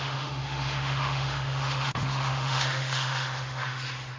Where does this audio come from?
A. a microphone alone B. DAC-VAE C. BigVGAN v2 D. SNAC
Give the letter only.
B